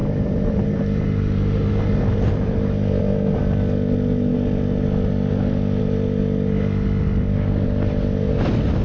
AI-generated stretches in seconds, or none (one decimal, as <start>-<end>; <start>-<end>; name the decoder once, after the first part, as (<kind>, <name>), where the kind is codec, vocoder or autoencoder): 0.0-3.0 (vocoder, BigVGAN v2)